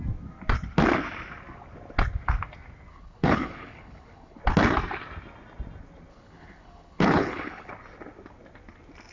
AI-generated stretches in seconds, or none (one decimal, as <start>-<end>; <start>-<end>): 2.9-4.4; 6.1-7.7